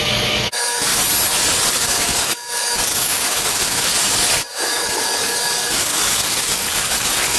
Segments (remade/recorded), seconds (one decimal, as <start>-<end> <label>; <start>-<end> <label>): 0.0-0.9 remade; 0.9-1.7 recorded; 1.7-3.9 remade; 3.9-4.5 recorded; 4.5-7.4 remade